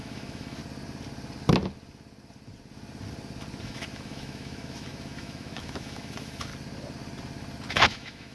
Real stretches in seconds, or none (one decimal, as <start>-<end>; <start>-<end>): 0.6-3.6; 6.5-7.7